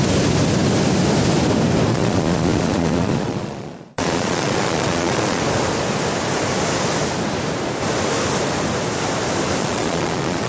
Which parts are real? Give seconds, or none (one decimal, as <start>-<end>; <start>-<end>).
0.0-1.9; 5.4-9.6